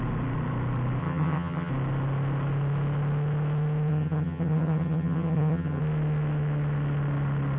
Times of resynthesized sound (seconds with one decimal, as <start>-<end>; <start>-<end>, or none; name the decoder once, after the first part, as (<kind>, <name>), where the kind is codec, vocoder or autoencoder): 1.0-1.7 (vocoder, HiFi-GAN); 3.9-5.8

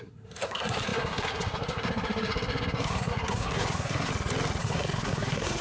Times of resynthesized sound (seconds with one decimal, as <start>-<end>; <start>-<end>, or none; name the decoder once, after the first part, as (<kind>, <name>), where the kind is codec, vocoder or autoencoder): 0.0-4.1 (codec, SNAC); 4.6-5.6